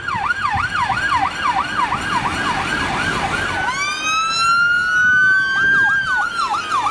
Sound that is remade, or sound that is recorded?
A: recorded